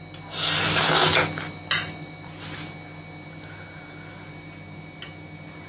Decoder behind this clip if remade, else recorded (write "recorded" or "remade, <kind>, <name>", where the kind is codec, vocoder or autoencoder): recorded